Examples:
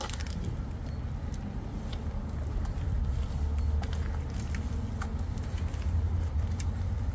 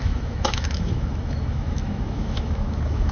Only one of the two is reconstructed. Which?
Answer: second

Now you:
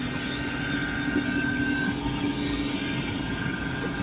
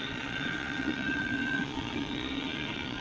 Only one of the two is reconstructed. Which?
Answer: second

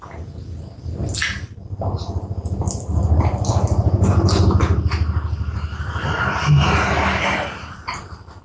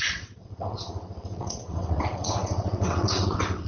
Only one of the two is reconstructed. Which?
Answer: second